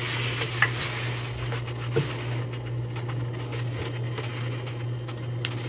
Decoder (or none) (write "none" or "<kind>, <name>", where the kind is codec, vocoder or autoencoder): none